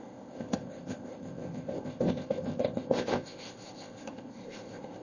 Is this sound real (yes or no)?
no